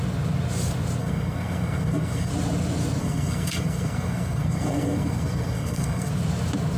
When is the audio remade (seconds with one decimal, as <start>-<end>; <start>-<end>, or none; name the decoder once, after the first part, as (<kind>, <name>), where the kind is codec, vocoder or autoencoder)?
1.0-2.3 (codec, SNAC); 3.0-6.1